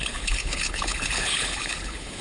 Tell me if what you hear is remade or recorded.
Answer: remade